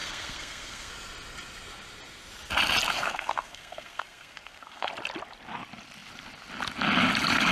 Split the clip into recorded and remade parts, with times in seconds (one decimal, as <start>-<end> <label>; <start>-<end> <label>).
0.0-0.9 remade; 0.9-2.9 recorded; 2.9-4.9 remade; 4.9-7.5 recorded